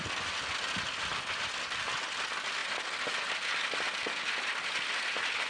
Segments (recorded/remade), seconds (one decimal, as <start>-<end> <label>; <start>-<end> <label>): 0.0-5.5 recorded